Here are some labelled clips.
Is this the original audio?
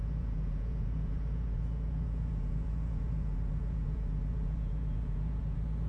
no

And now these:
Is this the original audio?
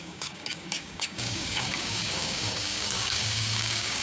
no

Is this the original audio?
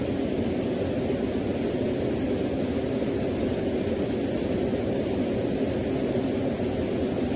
yes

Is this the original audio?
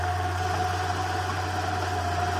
yes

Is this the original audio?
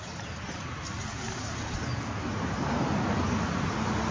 yes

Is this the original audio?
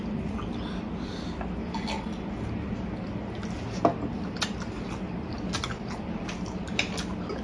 yes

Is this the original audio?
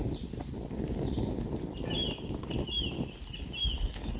yes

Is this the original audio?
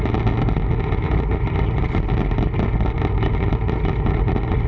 yes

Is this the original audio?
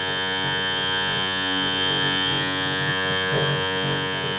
no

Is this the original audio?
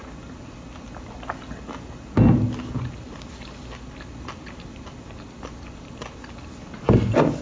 yes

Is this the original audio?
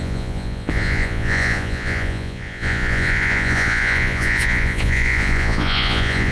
no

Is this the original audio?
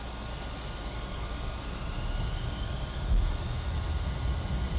yes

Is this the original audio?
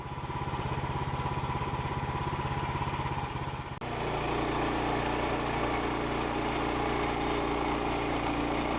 yes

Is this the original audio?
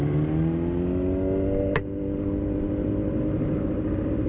yes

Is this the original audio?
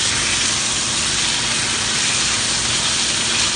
yes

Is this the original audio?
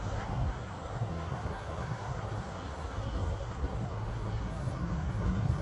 no